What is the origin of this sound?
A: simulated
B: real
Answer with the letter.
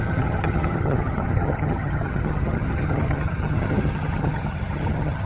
A